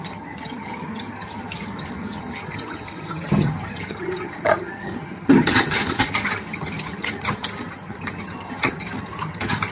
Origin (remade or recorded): remade